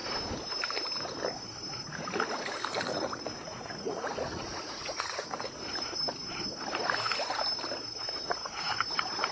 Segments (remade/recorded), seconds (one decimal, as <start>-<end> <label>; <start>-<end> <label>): 0.0-2.9 recorded; 2.9-5.6 remade; 5.6-9.3 recorded